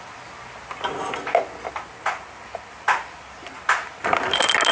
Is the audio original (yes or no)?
yes